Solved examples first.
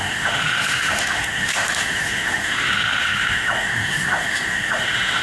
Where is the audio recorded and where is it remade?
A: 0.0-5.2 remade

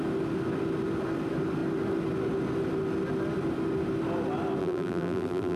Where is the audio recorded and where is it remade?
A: 0.0-4.6 recorded; 4.6-5.6 remade